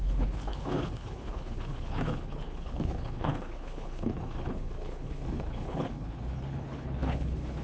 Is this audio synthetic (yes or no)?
yes